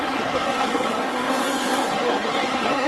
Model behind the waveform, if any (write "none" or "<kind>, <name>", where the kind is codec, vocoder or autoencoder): codec, SNAC